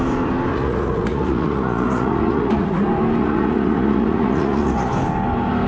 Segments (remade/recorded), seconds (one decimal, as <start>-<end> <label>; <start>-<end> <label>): 0.0-0.5 recorded; 0.5-2.8 remade; 2.8-3.2 recorded; 3.2-4.9 remade; 4.9-5.7 recorded